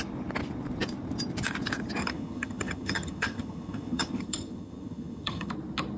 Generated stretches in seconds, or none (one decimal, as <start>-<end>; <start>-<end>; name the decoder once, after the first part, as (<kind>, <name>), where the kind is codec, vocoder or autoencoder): 2.0-5.5 (vocoder, HiFi-GAN)